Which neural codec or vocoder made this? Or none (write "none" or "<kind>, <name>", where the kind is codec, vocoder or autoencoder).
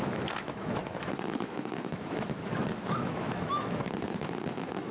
autoencoder, DAC-VAE